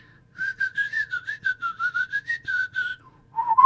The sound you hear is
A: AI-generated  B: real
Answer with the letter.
A